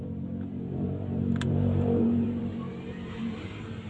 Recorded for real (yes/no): no